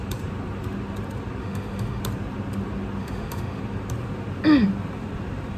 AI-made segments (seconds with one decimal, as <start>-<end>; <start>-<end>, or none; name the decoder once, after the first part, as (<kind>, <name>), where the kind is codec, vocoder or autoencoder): 1.4-2.0 (autoencoder, DAC-VAE); 3.0-3.6